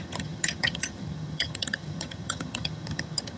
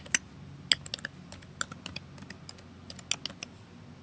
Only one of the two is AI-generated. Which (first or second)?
first